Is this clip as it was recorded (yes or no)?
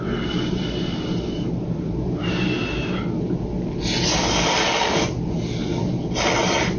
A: yes